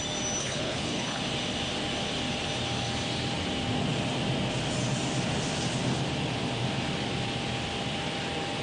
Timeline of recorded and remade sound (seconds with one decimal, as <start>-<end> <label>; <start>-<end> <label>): 0.0-0.4 recorded; 0.4-1.2 remade; 1.2-8.6 recorded